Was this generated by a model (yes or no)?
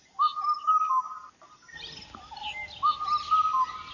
no